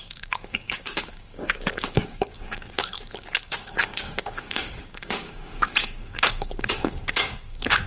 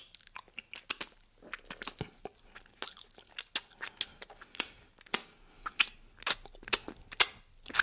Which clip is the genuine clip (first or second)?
second